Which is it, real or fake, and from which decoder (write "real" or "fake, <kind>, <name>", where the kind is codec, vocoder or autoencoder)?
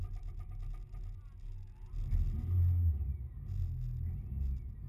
real